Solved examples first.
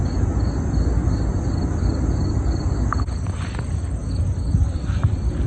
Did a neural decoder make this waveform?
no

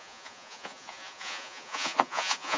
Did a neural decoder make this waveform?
yes